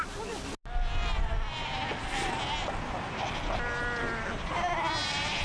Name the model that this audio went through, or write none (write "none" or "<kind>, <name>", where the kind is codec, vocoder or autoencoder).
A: none